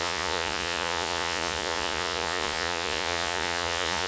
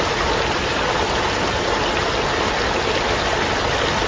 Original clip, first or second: second